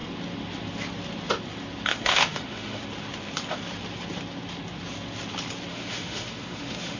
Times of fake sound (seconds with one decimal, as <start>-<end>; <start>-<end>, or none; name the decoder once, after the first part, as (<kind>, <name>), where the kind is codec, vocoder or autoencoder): 1.9-2.8 (autoencoder, DAC-VAE); 5.7-7.0